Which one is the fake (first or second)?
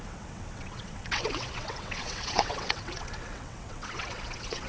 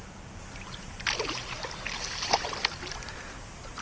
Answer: first